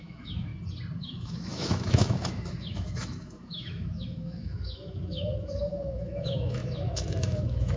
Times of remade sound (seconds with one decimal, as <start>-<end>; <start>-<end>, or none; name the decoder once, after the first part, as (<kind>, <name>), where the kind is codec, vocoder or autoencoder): 0.0-0.5 (autoencoder, DAC-VAE); 1.0-7.8